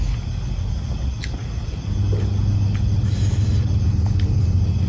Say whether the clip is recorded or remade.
recorded